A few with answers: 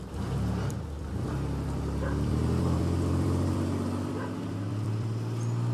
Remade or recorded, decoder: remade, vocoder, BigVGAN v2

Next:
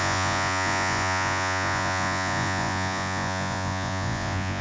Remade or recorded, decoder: remade, vocoder, Vocos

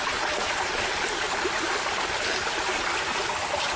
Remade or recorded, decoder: recorded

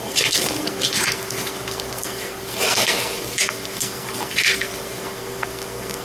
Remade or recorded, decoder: remade, codec, SNAC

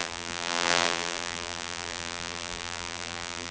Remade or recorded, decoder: remade, vocoder, BigVGAN v2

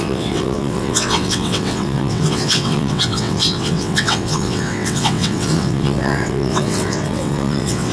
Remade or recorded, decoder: remade, vocoder, WaveNeXt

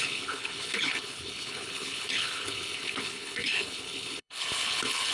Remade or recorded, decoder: remade, codec, HILCodec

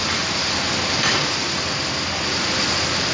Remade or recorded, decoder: recorded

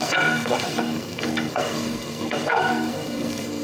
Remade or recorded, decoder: remade, codec, SNAC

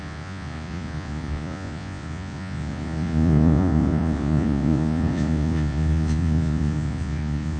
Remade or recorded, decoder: remade, vocoder, Vocos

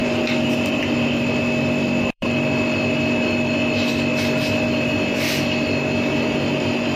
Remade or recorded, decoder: remade, vocoder, BigVGAN v2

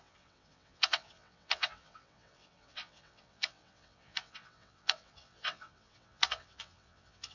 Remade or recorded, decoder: remade, vocoder, WaveNeXt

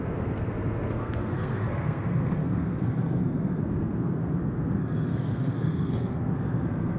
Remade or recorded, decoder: remade, codec, SNAC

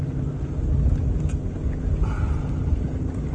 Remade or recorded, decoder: recorded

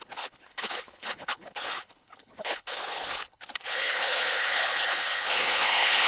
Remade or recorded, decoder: remade, codec, HILCodec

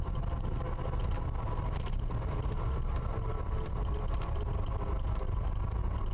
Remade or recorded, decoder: recorded